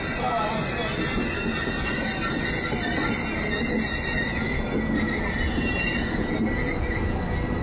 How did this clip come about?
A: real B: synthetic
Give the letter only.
A